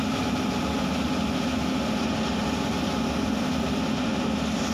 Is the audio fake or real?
real